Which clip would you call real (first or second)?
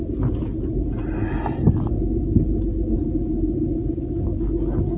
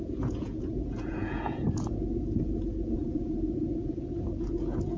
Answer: first